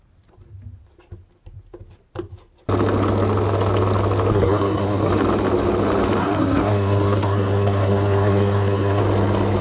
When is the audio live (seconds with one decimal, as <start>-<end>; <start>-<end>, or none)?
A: 0.0-4.3; 5.1-6.2; 9.0-9.6